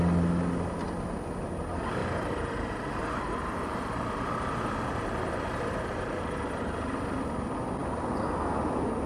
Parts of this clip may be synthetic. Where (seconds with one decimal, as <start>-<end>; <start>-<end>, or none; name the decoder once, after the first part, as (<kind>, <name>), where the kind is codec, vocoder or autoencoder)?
2.0-6.7 (vocoder, BigVGAN v2)